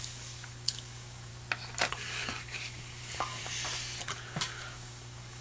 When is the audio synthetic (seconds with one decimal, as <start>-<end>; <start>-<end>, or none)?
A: 0.0-1.3; 1.9-3.4; 4.0-5.4